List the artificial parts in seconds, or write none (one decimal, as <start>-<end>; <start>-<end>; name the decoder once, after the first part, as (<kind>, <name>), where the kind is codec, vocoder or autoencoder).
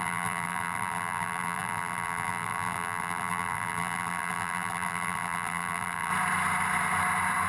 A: 0.0-6.1 (vocoder, BigVGAN v2)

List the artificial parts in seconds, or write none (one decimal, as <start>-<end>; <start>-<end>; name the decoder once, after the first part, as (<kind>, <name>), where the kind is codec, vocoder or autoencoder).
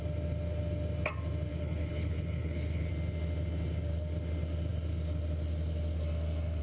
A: 1.5-2.9 (codec, HILCodec)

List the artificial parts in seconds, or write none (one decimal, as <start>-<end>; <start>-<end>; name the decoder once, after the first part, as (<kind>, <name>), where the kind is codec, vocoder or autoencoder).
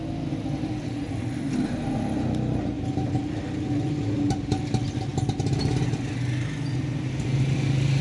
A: none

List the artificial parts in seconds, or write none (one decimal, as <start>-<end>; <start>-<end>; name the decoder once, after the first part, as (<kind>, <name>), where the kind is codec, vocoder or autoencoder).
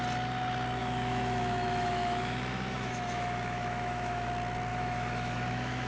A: 0.8-4.3 (autoencoder, DAC-VAE); 4.7-5.9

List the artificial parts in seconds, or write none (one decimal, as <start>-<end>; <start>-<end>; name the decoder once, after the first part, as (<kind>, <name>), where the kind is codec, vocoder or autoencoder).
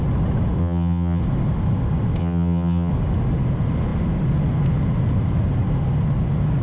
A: 0.6-1.2 (vocoder, HiFi-GAN); 2.2-2.9